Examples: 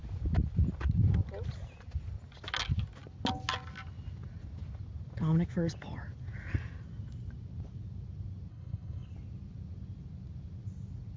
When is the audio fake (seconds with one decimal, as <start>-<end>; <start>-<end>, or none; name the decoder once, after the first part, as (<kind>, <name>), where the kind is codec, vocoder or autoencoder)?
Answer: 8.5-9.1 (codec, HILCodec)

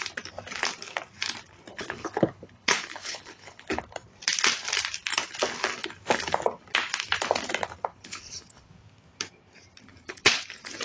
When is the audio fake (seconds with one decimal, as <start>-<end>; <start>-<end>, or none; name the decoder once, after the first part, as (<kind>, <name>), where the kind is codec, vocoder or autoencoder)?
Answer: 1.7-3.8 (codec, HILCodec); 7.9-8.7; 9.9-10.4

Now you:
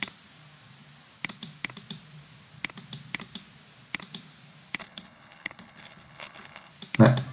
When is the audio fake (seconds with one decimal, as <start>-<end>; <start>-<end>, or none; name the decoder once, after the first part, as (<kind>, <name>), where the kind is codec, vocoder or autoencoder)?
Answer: 4.8-6.7 (codec, HILCodec)